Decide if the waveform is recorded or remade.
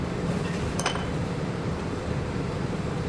remade